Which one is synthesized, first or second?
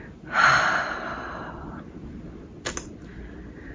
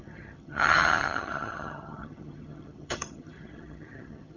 second